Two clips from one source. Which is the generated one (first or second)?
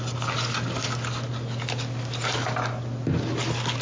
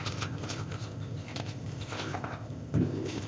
second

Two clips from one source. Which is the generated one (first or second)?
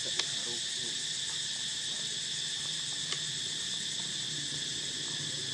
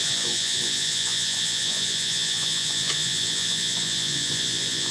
second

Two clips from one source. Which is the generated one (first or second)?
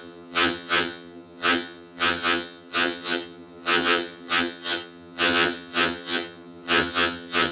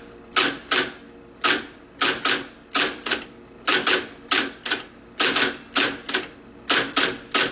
first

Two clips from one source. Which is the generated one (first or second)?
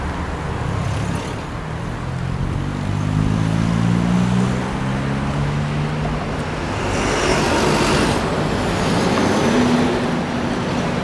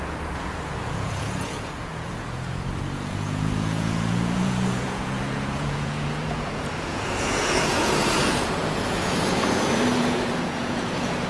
second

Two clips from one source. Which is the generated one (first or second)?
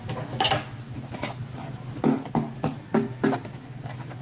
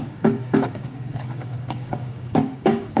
second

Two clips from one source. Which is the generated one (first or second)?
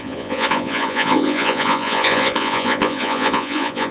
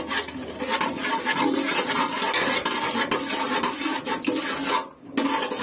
first